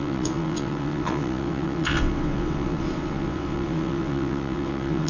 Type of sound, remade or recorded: remade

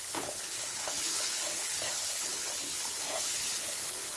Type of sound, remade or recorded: remade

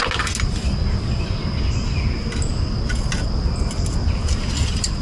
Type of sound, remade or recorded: recorded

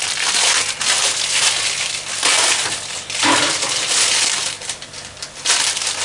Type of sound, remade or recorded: recorded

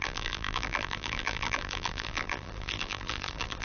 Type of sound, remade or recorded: remade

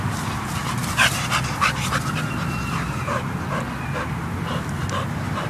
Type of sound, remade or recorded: recorded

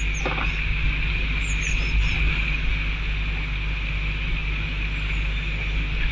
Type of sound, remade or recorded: recorded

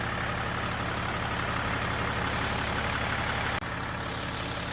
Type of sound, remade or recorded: recorded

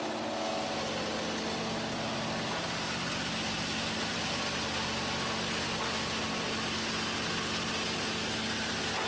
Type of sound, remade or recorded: recorded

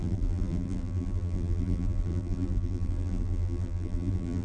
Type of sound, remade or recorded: remade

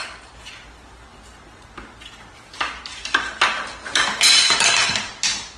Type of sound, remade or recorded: recorded